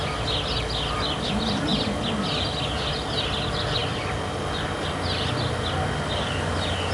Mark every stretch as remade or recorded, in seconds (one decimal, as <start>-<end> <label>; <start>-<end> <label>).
0.0-6.9 recorded